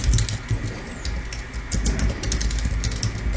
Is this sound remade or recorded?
recorded